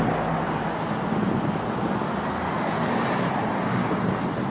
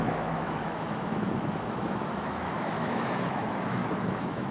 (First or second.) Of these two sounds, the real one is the first